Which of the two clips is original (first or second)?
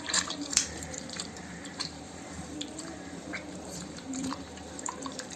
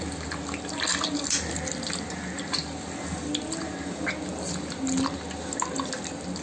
second